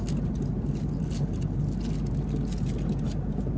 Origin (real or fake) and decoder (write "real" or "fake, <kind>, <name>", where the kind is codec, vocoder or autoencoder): real